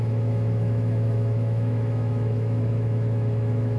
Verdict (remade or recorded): remade